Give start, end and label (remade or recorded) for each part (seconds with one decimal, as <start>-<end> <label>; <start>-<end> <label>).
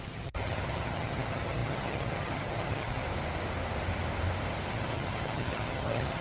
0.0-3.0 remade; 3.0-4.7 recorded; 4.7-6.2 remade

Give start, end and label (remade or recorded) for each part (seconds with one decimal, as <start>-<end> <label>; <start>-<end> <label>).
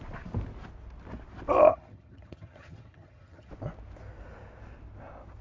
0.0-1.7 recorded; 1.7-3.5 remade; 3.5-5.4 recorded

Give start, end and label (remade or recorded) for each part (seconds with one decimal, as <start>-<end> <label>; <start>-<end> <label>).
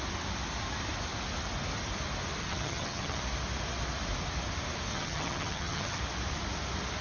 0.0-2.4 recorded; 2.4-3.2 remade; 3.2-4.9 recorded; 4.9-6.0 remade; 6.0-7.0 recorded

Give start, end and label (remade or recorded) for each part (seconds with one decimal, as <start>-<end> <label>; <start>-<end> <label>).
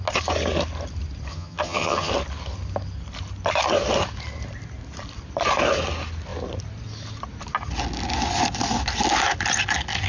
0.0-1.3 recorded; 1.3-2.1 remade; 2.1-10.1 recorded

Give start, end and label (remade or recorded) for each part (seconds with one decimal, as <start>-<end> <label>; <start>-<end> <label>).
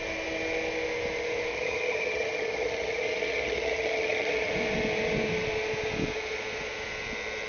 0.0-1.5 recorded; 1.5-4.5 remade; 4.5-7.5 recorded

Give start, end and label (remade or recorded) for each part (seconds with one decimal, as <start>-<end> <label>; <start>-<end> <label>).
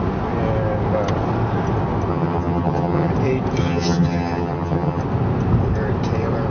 0.0-2.1 recorded; 2.1-3.1 remade; 3.1-3.6 recorded; 3.6-5.0 remade; 5.0-6.5 recorded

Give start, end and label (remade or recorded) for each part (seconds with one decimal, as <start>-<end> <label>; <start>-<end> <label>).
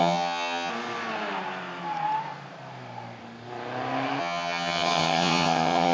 0.0-0.7 remade; 0.7-4.2 recorded; 4.2-5.9 remade